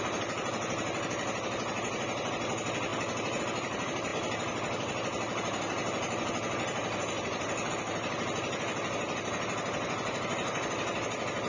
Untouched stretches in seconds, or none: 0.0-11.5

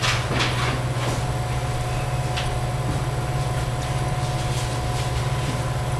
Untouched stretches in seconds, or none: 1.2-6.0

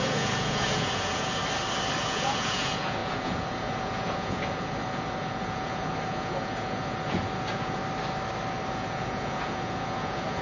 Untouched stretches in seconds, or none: 1.4-2.0; 7.8-8.7

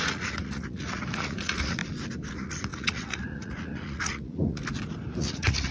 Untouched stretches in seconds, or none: 1.8-2.3; 4.6-5.2

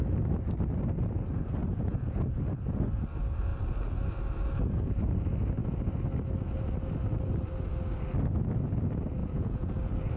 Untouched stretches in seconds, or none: 0.0-1.6; 2.3-9.2; 9.7-10.2

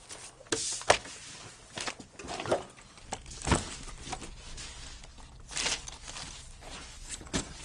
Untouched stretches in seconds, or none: 0.0-6.6

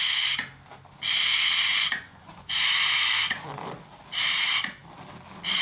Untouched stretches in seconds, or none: 0.0-1.7; 2.6-5.6